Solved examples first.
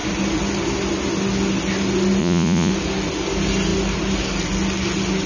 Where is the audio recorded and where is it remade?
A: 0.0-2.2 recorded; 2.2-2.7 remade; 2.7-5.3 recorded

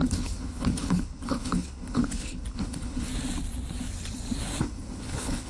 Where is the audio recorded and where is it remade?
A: 0.0-3.1 remade; 3.1-4.6 recorded; 4.6-5.5 remade

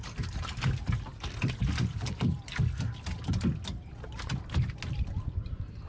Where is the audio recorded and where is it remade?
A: 0.0-5.9 recorded

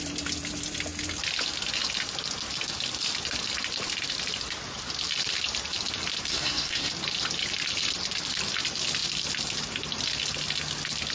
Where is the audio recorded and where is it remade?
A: 0.0-6.3 recorded; 6.3-6.9 remade; 6.9-11.1 recorded

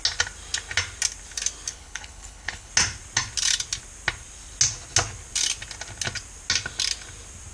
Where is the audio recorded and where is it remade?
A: 0.0-1.7 recorded; 1.7-2.7 remade; 2.7-7.5 recorded

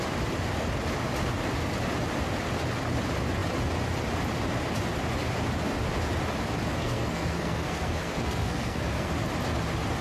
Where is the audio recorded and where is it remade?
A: 0.0-6.8 recorded; 6.8-9.1 remade; 9.1-10.0 recorded

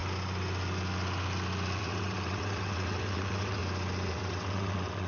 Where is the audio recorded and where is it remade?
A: 0.0-1.8 recorded; 1.8-3.6 remade; 3.6-4.1 recorded; 4.1-5.1 remade

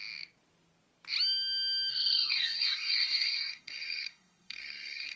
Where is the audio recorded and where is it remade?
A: 0.0-1.9 recorded; 1.9-5.2 remade